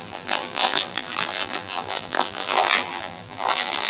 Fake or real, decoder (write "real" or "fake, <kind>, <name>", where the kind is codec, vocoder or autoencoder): fake, vocoder, BigVGAN v2